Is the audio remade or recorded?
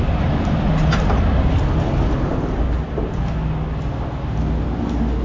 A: recorded